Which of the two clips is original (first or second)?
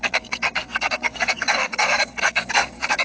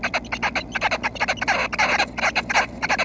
second